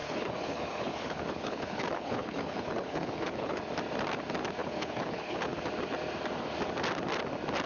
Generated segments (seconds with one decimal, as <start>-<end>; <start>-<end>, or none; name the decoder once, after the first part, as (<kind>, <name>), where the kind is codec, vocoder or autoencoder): 0.0-3.6 (codec, HILCodec); 4.6-5.6